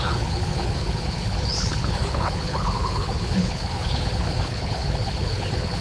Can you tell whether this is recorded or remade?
remade